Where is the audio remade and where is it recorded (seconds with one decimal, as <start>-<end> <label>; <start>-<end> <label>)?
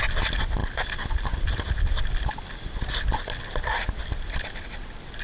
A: 0.0-5.2 recorded